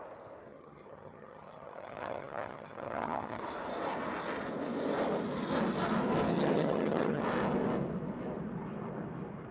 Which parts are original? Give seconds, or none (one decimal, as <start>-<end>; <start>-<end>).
0.0-0.5; 3.4-6.3; 7.2-9.5